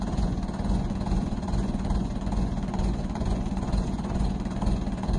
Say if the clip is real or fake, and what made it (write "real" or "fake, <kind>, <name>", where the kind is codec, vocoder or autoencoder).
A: fake, vocoder, Vocos